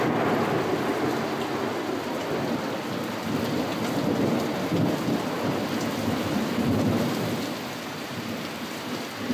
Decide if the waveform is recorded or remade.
recorded